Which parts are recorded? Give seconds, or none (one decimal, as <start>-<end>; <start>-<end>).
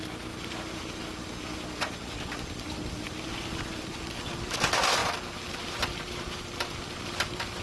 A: 0.0-7.6